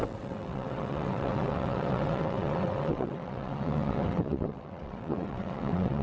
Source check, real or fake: fake